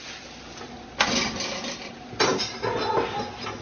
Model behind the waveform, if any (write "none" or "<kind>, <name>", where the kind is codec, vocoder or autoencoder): none